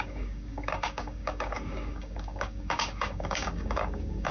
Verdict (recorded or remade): remade